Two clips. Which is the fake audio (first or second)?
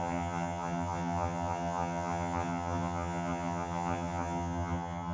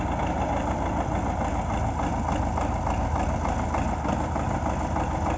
first